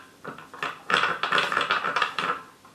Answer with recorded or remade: recorded